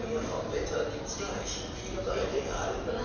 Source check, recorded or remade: recorded